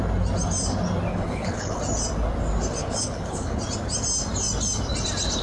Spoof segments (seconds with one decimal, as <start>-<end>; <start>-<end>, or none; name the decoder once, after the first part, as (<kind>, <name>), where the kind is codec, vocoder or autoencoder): 1.1-1.8 (codec, HILCodec); 2.8-3.6